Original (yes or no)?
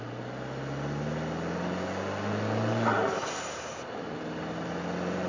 yes